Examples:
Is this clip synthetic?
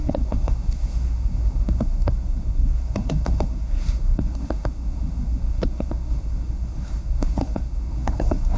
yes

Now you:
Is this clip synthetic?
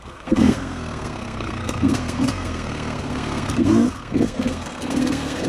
yes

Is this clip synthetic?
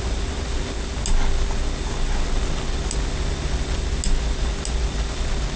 no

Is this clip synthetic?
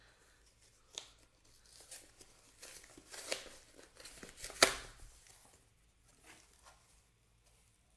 no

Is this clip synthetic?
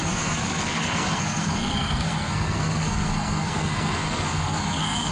yes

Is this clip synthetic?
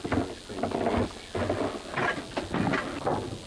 no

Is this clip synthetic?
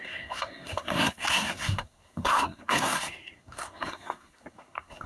yes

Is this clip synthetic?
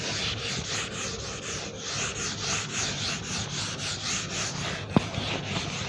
no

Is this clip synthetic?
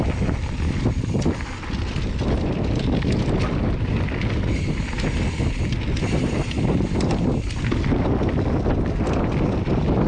no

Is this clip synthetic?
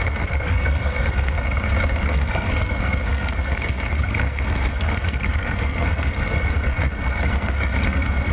yes